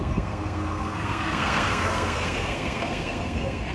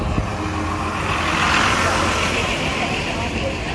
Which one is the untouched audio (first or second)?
second